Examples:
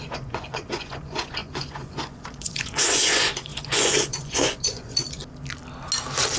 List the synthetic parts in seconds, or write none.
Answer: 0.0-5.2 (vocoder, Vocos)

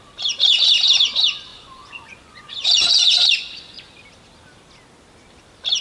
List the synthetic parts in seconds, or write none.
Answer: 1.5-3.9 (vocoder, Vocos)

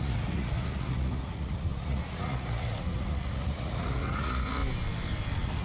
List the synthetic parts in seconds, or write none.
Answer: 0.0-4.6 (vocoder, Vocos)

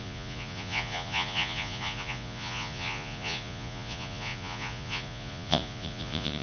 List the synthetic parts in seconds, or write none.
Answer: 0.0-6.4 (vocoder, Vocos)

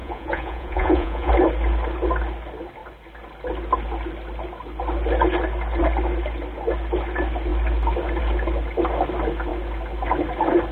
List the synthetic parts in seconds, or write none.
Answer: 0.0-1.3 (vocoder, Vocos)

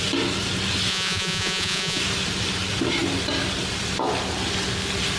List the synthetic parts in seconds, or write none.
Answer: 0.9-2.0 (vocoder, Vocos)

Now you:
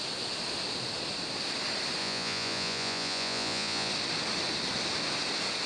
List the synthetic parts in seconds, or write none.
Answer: 2.0-3.9 (vocoder, Vocos)